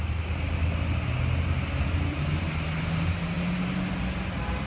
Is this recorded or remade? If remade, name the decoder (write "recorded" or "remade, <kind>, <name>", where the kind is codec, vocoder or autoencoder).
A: recorded